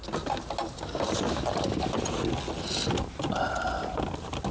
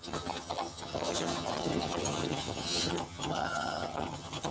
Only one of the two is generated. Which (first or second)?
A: second